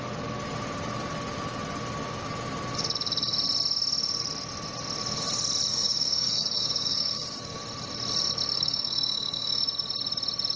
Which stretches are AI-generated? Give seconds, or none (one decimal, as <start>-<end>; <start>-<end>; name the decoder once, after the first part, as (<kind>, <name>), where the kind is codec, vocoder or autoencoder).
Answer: 5.7-7.6 (codec, DAC); 8.5-9.6